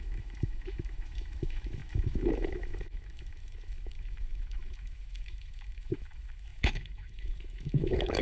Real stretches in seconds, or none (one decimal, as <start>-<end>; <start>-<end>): none